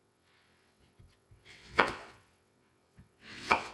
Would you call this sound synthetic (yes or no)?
yes